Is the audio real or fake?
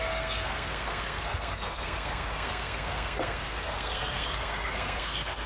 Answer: fake